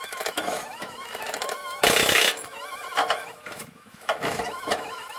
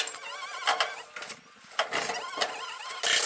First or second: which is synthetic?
first